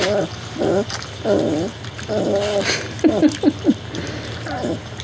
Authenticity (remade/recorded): recorded